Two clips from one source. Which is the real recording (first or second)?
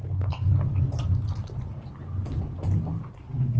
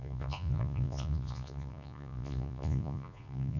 first